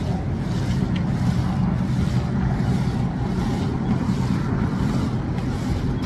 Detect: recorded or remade recorded